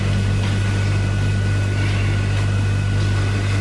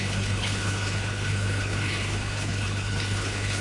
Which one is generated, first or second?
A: second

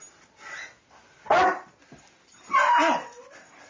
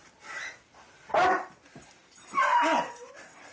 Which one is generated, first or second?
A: second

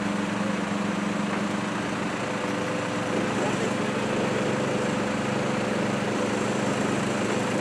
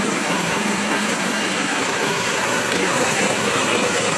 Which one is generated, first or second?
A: second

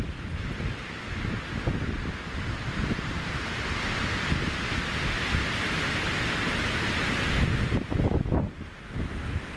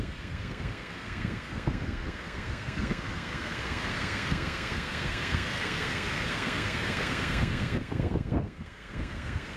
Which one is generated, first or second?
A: second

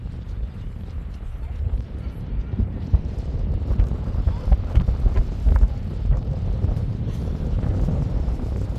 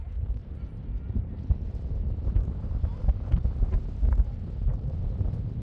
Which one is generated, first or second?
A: first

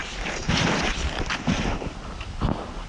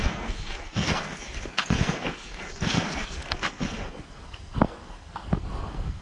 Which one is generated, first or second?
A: second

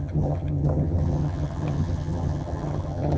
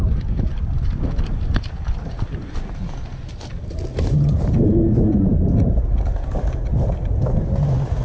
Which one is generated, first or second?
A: first